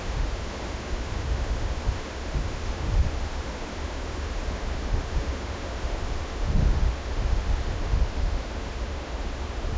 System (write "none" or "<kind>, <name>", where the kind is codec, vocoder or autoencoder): autoencoder, DAC-VAE